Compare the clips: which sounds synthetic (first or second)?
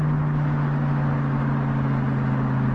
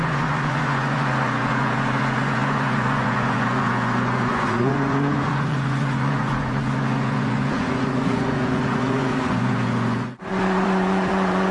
second